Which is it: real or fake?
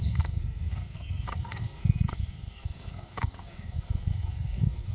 fake